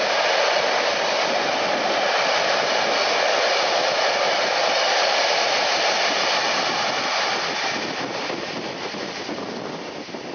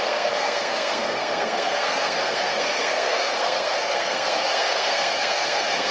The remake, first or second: second